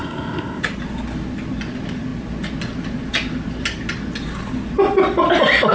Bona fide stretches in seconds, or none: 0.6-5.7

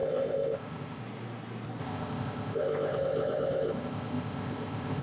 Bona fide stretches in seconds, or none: 1.0-1.8